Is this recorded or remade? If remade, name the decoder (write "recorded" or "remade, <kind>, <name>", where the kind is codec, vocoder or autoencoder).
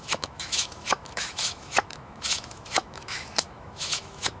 remade, autoencoder, DAC-VAE